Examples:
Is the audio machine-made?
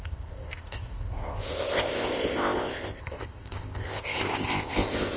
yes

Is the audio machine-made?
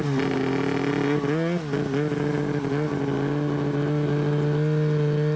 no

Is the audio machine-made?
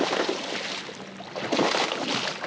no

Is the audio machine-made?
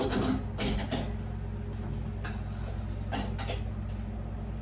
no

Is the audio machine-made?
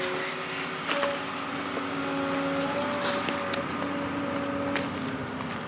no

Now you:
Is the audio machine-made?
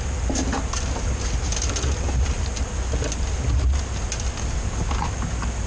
no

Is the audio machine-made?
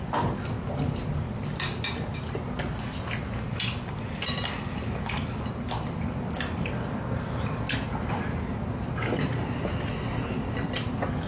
no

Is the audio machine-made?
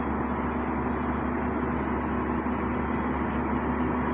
no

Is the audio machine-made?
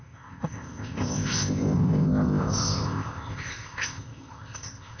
yes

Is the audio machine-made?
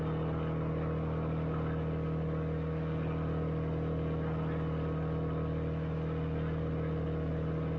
no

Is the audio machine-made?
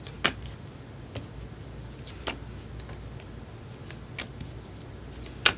no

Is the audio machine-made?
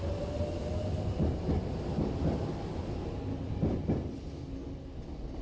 no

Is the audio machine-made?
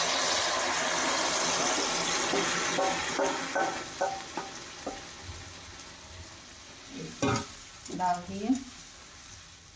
no